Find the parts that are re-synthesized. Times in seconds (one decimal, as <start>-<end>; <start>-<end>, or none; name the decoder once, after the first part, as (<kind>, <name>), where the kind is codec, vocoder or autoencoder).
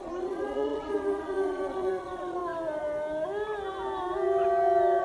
0.0-2.4 (vocoder, Vocos)